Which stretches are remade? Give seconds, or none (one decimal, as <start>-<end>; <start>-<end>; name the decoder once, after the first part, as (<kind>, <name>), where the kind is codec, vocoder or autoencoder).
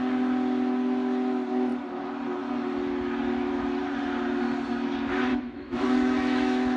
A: 5.3-6.8 (autoencoder, DAC-VAE)